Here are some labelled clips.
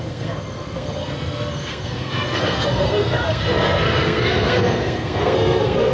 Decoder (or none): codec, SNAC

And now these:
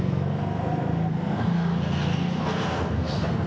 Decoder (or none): codec, SNAC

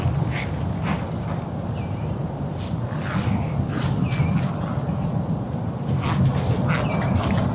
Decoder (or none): none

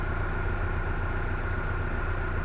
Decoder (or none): none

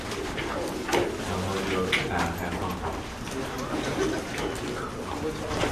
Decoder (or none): none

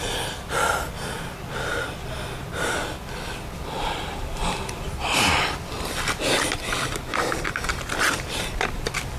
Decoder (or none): none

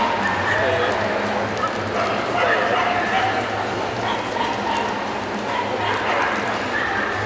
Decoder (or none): none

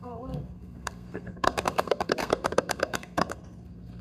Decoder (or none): codec, SNAC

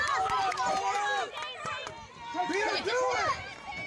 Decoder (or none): none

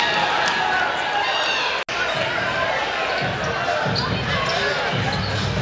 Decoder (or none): none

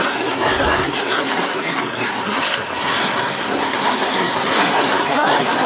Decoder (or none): codec, SNAC